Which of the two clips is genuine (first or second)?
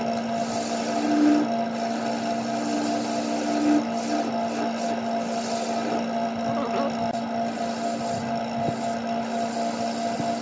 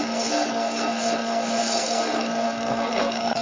first